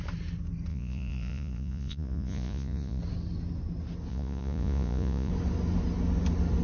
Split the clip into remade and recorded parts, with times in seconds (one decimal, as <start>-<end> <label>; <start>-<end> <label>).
0.0-0.7 recorded; 0.7-3.0 remade; 3.0-4.1 recorded; 4.1-5.3 remade; 5.3-6.6 recorded